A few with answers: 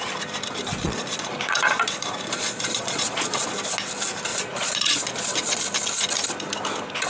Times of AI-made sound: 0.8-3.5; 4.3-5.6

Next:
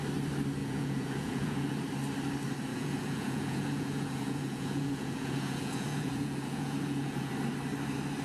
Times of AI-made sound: 0.6-1.8; 2.7-7.3

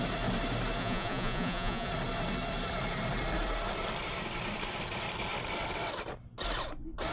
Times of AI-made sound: 0.8-1.9